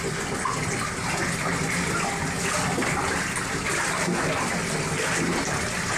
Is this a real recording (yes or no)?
yes